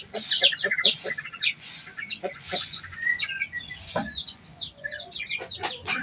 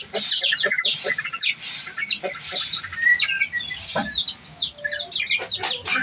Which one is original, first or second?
second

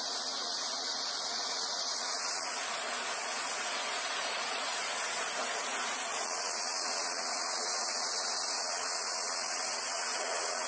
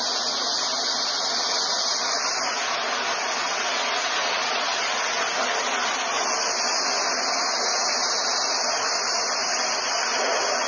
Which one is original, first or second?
second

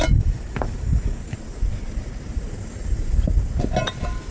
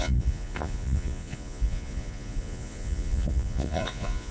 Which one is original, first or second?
first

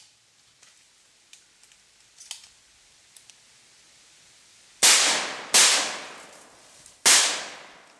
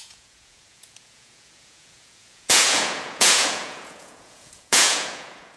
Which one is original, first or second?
first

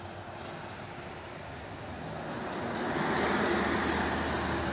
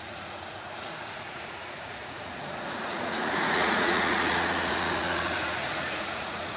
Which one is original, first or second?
first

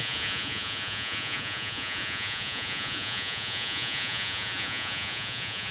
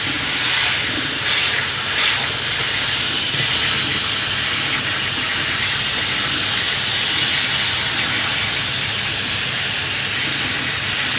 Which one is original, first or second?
second